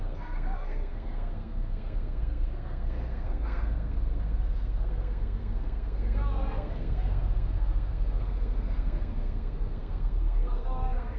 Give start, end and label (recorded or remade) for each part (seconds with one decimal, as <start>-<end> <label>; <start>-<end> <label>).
0.0-11.2 remade